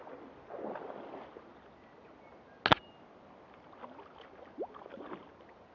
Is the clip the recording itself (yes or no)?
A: yes